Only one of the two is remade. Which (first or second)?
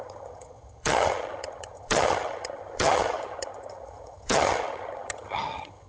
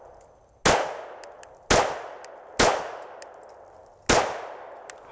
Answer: first